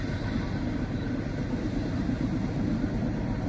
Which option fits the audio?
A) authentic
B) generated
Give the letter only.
A